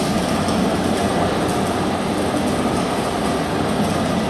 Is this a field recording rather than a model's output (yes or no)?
yes